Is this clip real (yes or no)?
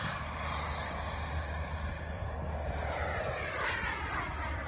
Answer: yes